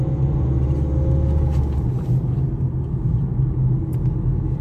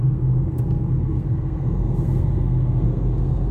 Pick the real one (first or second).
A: first